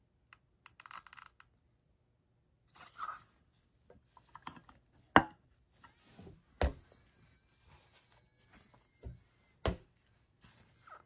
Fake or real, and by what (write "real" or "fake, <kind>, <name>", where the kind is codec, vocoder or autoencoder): real